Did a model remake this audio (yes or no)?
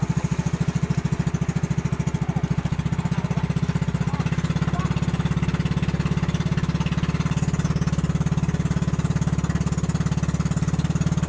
no